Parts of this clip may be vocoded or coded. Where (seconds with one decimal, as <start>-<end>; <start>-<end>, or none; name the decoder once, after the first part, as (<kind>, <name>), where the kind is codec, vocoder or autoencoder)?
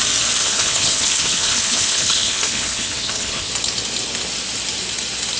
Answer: 0.4-3.5 (codec, HILCodec)